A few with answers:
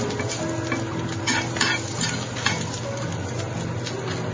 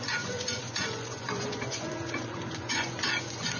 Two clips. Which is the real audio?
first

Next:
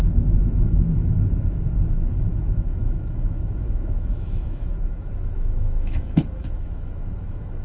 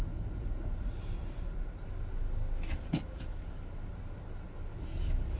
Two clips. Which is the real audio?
second